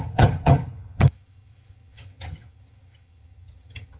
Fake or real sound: fake